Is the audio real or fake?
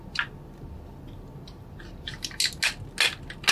real